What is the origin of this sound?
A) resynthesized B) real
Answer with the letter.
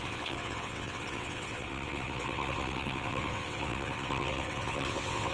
A